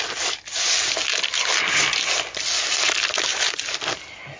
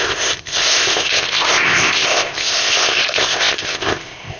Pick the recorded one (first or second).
first